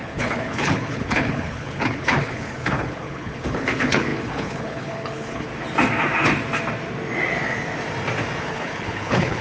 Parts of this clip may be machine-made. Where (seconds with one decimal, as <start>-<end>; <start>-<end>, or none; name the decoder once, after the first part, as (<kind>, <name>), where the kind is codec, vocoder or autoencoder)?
0.0-5.5 (codec, HILCodec); 8.4-9.4